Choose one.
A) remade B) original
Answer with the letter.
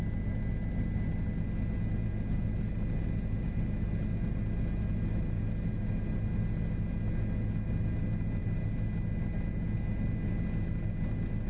B